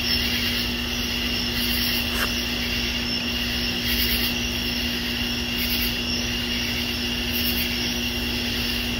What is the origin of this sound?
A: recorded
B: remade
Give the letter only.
A